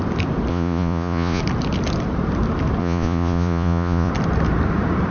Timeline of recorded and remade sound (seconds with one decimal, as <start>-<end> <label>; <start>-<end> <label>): 0.0-0.5 recorded; 0.5-1.4 remade; 1.4-2.8 recorded; 2.8-4.1 remade; 4.1-5.1 recorded